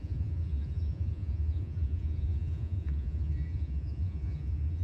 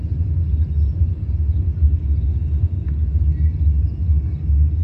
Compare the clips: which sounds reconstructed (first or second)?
first